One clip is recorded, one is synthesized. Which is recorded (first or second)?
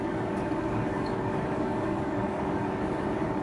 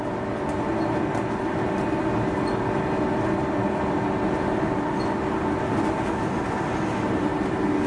second